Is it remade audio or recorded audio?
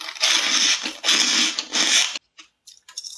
recorded